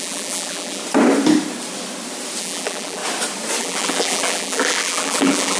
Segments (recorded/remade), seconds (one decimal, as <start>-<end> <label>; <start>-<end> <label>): 0.0-0.8 remade; 0.8-2.4 recorded; 2.4-3.0 remade; 3.0-3.6 recorded; 3.6-5.6 remade